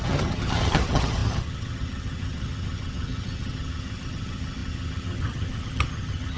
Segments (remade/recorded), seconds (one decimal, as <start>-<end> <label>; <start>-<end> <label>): 0.0-6.4 remade